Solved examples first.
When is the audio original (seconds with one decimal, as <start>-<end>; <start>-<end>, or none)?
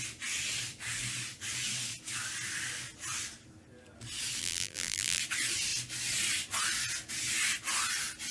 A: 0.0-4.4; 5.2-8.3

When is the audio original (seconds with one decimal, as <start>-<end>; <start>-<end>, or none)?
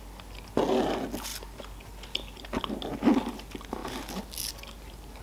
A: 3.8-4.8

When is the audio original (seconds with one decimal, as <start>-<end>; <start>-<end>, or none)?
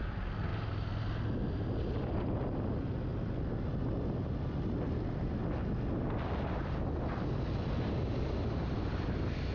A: 0.5-2.0; 3.1-6.2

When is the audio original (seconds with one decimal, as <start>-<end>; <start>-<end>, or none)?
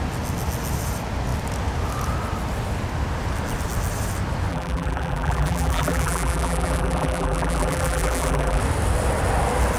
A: 0.0-4.5; 8.6-9.8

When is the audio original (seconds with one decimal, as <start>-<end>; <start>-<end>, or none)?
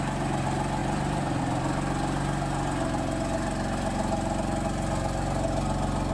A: 0.0-0.8; 1.4-6.1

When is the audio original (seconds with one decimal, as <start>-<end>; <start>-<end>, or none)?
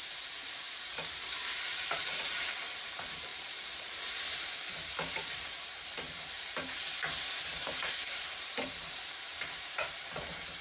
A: none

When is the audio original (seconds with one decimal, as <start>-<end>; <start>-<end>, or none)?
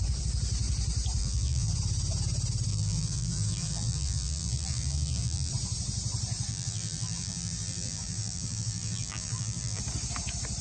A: 0.0-1.2; 1.7-2.7; 5.5-6.5; 9.8-10.6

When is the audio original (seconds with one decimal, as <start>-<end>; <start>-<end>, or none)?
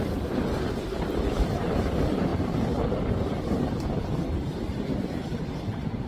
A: none